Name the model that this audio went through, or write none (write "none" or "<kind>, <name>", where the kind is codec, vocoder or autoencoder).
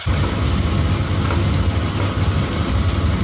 none